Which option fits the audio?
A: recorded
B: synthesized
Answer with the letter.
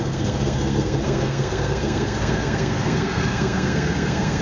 B